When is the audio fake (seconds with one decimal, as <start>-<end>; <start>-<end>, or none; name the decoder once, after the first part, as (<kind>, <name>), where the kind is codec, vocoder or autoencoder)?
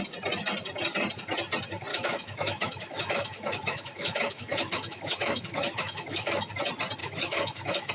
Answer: 1.9-6.5 (autoencoder, DAC-VAE); 7.0-7.9